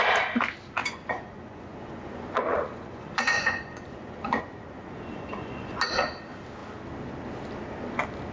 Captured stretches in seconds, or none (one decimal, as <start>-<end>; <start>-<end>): 0.0-0.8; 5.8-8.3